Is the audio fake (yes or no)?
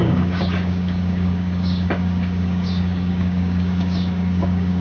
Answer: yes